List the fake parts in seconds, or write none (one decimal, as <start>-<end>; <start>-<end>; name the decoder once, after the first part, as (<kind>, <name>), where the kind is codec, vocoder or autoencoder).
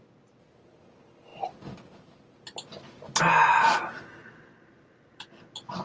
none